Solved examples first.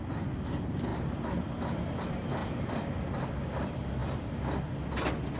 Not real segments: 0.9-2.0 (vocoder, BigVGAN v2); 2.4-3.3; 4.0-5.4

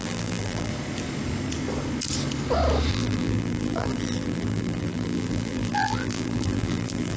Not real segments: 0.0-0.7 (vocoder, BigVGAN v2); 2.9-7.2

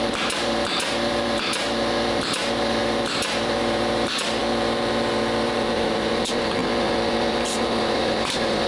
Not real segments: 0.0-6.6 (vocoder, BigVGAN v2); 7.3-8.7

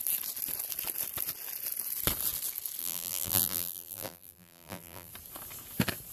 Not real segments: 2.8-5.1 (vocoder, BigVGAN v2)